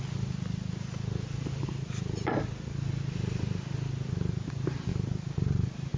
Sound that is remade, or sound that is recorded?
recorded